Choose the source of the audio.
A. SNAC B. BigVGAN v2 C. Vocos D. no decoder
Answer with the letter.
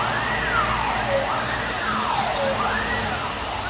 D